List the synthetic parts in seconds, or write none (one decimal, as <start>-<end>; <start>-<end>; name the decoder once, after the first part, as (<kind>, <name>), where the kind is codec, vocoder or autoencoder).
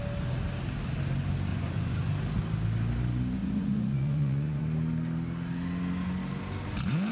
1.5-2.1 (vocoder, Vocos); 3.4-4.6